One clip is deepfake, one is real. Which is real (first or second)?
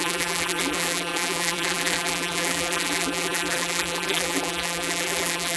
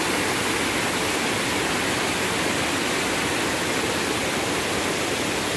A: second